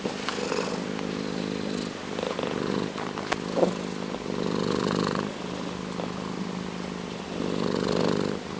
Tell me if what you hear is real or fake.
real